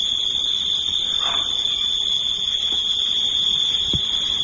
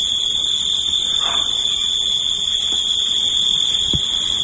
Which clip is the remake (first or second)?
first